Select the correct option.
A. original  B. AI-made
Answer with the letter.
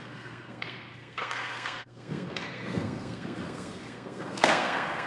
B